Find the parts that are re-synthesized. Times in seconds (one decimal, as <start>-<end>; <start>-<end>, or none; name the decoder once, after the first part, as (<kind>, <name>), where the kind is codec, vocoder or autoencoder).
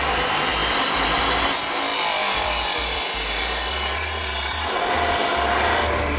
0.6-1.2 (vocoder, BigVGAN v2); 1.9-3.0